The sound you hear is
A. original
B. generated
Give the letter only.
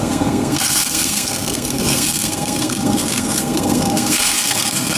B